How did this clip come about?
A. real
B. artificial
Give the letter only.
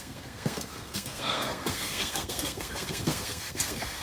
B